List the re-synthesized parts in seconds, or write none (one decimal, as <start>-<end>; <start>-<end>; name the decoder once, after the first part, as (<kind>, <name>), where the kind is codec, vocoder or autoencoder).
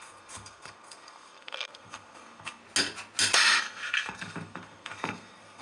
0.0-2.6 (codec, SNAC); 3.6-5.6